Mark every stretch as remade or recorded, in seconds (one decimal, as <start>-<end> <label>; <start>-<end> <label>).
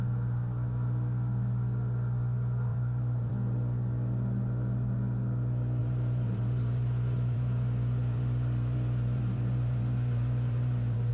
0.0-2.7 recorded; 2.7-3.3 remade; 3.3-5.8 recorded; 5.8-11.1 remade